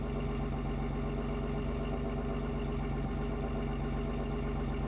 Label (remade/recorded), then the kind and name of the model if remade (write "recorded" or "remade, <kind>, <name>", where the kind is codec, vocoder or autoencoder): recorded